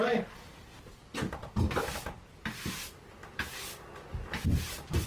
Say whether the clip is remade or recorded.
remade